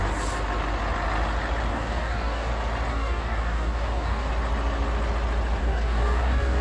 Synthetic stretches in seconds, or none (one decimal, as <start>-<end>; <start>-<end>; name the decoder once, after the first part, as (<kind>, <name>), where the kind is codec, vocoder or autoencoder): 1.7-2.5 (codec, DAC); 2.9-4.3; 5.6-6.6